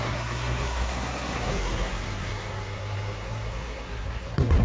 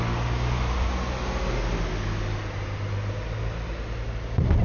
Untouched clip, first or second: second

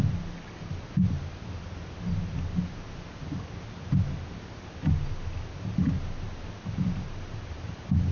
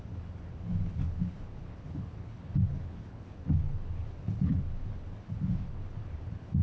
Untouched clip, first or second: first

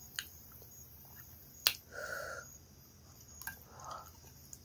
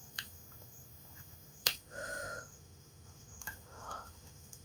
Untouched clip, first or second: first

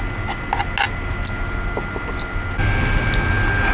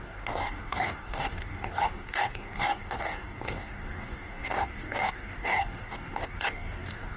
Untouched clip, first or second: first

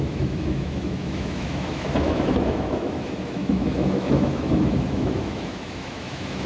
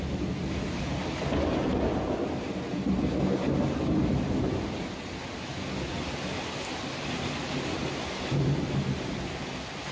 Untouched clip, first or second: second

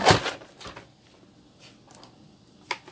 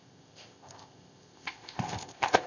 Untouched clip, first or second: first